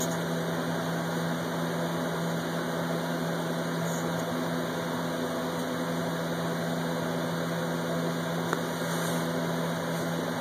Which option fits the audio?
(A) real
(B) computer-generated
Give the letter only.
A